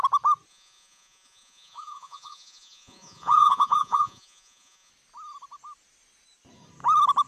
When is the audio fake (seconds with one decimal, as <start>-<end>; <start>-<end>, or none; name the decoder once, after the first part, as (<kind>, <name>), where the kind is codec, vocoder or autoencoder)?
0.5-4.9 (vocoder, Vocos)